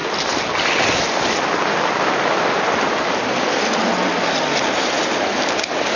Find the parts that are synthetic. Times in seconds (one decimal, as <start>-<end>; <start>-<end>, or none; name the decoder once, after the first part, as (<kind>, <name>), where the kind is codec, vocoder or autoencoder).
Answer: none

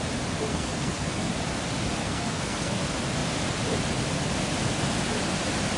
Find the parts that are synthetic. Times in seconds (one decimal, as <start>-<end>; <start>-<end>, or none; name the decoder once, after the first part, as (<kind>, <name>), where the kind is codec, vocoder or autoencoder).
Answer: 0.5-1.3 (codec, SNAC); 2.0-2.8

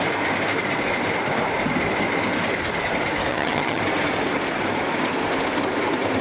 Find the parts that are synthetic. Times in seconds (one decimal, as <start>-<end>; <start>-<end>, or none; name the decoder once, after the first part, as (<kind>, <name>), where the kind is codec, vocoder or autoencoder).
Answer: 3.3-3.8 (vocoder, HiFi-GAN)

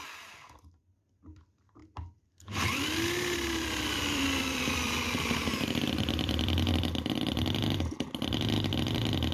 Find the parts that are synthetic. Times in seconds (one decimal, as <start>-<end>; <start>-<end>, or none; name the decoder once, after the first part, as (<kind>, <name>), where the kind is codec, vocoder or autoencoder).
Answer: 1.8-6.7 (vocoder, BigVGAN v2)

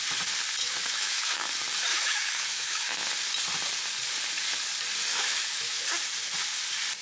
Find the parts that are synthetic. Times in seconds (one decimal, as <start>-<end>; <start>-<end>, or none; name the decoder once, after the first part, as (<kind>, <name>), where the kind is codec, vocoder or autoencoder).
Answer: 0.6-1.5 (autoencoder, DAC-VAE); 1.9-3.1; 5.1-5.8